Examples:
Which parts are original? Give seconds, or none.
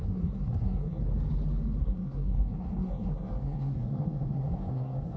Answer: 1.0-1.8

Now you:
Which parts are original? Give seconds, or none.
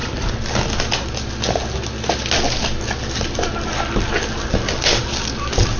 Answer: 0.0-5.8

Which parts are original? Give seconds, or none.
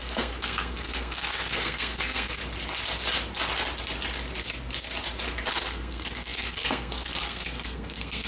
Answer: 2.4-5.5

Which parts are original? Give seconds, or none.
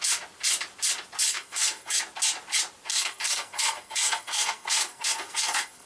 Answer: 0.0-1.3; 2.0-2.9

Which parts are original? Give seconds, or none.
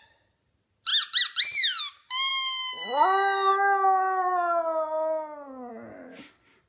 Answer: 0.0-6.7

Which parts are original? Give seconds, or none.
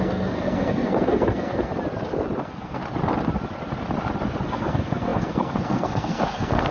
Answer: 1.7-2.4; 2.8-4.4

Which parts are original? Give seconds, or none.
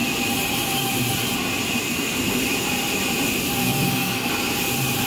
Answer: 0.0-1.8; 2.4-3.6; 4.3-5.1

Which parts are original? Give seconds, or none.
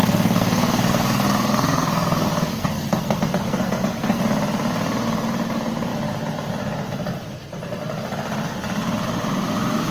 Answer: 4.2-9.9